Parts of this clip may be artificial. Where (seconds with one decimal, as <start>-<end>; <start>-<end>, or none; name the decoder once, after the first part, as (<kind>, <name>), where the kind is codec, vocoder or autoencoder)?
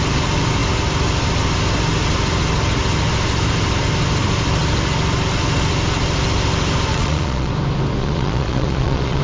6.9-7.5 (vocoder, Vocos); 8.0-9.2